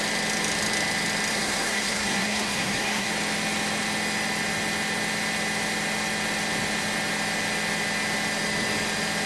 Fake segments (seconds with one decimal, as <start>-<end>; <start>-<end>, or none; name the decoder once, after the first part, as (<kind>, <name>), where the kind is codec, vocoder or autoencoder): 1.3-3.1 (codec, SNAC)